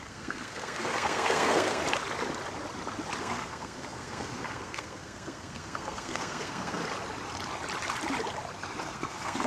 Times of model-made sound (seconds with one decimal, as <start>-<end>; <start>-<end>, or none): 0.0-1.8; 3.2-6.8; 8.8-9.5